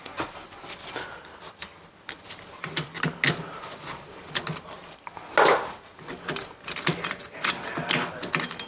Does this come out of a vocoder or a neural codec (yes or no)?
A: no